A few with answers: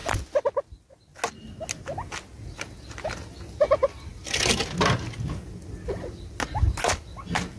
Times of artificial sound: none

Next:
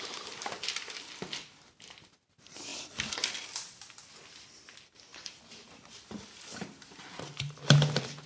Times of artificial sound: 5.1-5.7 (vocoder, BigVGAN v2)

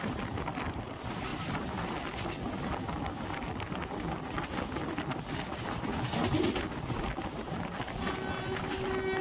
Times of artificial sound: none

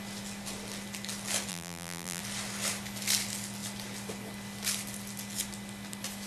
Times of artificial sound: 1.5-2.2 (vocoder, BigVGAN v2)

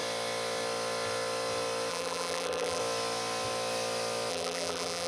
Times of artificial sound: 1.9-2.8 (vocoder, BigVGAN v2); 4.3-5.1